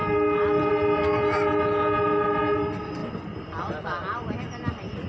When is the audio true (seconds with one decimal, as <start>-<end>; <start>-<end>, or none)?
0.0-5.1